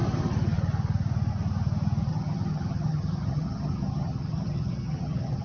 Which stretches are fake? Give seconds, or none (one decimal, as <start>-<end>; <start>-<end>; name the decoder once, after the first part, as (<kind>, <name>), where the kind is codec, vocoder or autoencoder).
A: 2.1-5.4 (vocoder, HiFi-GAN)